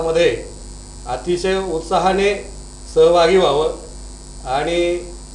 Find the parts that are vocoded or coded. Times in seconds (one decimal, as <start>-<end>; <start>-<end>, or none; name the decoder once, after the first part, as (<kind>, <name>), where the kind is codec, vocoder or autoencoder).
none